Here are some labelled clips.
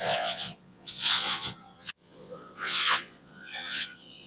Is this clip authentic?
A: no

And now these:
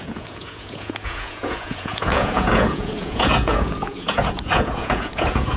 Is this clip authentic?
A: no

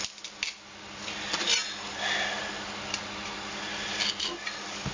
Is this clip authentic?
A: yes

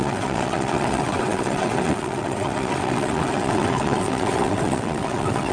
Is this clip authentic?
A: no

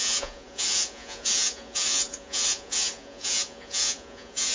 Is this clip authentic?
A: no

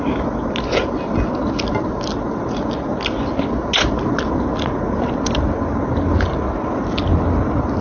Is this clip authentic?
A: yes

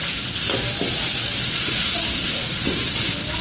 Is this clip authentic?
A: yes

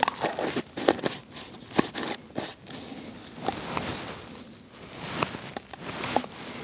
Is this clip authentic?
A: yes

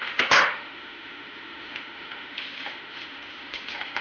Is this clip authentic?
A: no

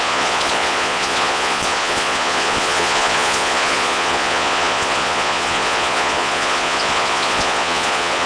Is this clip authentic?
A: no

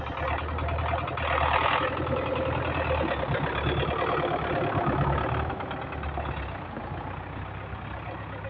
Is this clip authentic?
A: yes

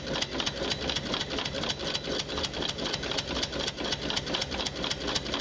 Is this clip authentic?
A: yes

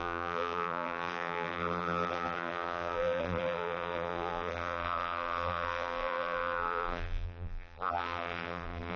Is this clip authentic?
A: no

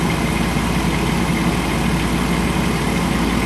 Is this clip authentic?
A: yes